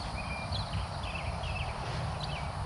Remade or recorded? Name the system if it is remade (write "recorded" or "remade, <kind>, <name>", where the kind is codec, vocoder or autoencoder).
recorded